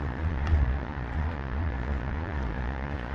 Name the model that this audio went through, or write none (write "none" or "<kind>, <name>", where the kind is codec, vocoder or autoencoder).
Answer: vocoder, Vocos